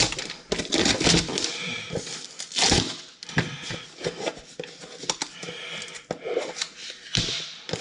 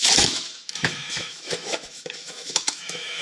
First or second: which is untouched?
first